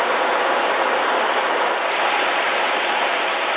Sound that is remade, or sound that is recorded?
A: recorded